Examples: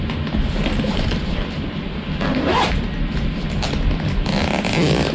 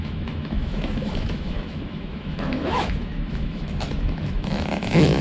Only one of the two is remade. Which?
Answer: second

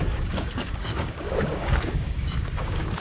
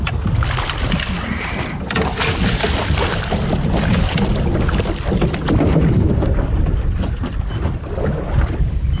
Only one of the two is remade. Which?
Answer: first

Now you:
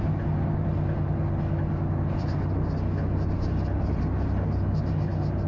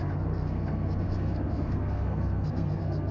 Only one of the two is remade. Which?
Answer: second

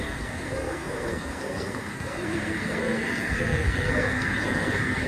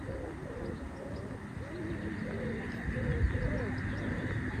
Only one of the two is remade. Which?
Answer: first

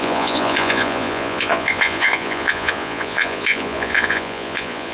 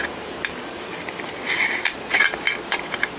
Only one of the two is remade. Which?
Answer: first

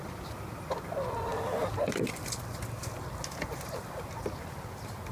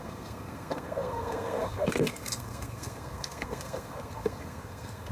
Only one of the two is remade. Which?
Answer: second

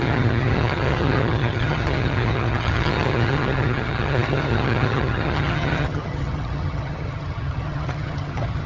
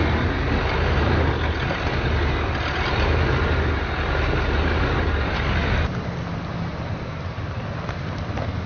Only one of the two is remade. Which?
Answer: first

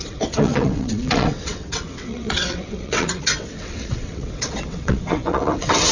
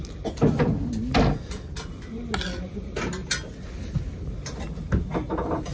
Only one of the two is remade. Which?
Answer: first